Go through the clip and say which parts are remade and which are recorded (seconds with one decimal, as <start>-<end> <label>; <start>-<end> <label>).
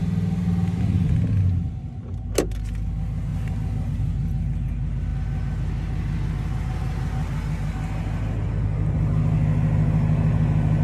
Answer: 0.0-10.8 recorded